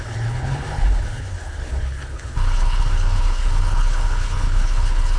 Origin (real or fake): fake